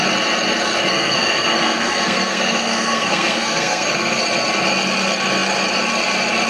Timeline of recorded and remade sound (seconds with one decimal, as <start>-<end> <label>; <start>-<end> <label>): 0.0-0.9 recorded; 0.9-4.2 remade; 4.2-6.5 recorded